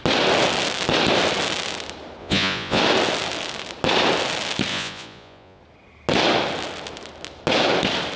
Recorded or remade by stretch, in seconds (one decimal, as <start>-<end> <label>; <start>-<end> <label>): 0.0-2.2 recorded; 2.2-2.8 remade; 2.8-4.7 recorded; 4.7-5.6 remade; 5.6-8.2 recorded